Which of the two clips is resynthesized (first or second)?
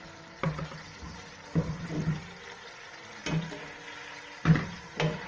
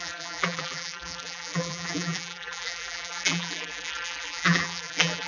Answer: second